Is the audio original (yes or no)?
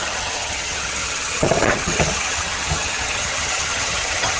no